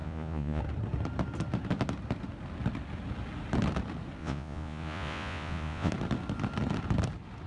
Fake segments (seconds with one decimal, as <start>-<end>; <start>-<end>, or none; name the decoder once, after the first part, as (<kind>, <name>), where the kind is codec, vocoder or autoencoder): 0.0-0.6 (vocoder, Vocos); 4.2-5.9